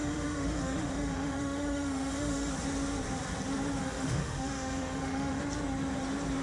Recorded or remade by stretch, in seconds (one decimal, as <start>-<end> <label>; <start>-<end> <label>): 0.0-2.5 remade; 2.5-3.8 recorded; 3.8-5.4 remade; 5.4-6.4 recorded